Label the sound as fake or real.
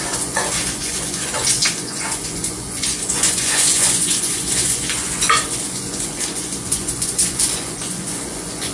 fake